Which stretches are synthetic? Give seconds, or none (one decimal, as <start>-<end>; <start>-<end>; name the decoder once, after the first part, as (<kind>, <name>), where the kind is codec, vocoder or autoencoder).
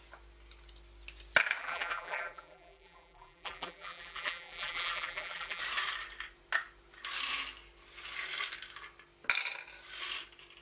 1.6-5.6 (vocoder, BigVGAN v2)